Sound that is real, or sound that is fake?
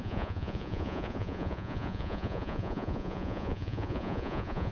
fake